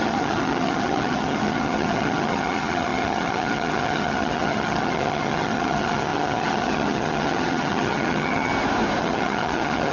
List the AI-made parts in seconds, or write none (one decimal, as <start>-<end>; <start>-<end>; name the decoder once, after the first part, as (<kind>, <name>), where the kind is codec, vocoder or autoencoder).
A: 0.0-8.5 (vocoder, HiFi-GAN); 9.0-9.9